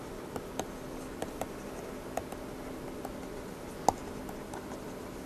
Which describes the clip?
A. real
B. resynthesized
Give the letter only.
A